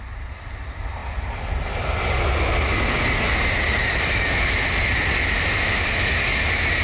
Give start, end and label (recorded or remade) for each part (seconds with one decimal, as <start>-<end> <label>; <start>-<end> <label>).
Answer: 0.0-6.8 recorded